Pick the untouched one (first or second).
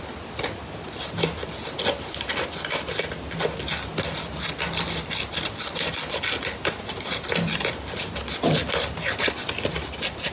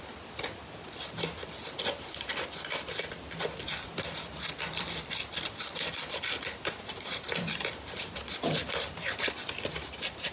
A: first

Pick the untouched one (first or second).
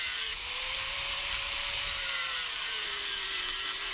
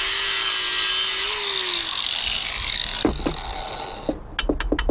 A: second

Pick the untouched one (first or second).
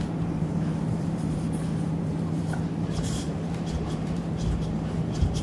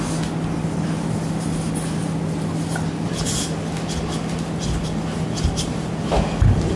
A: second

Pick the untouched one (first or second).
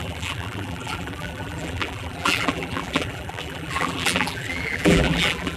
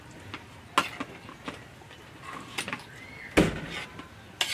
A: second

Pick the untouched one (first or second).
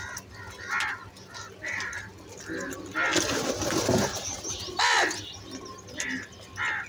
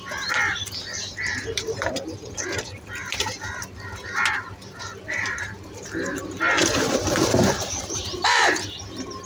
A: first